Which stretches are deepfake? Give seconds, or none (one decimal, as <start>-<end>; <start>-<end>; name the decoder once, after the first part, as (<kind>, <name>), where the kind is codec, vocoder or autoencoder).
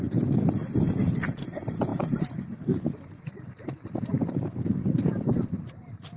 0.0-0.6 (vocoder, BigVGAN v2); 1.2-6.2